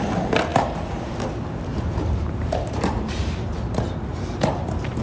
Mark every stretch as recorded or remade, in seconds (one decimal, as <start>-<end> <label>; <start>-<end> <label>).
0.0-0.5 recorded; 0.5-3.5 remade; 3.5-4.1 recorded; 4.1-5.0 remade